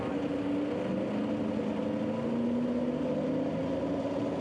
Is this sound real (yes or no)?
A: yes